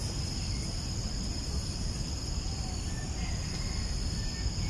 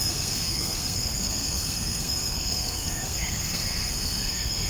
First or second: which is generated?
second